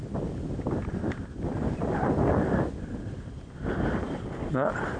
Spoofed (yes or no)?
no